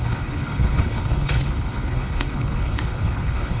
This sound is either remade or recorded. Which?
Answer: remade